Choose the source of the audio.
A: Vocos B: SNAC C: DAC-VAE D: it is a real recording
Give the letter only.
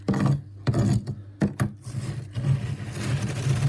D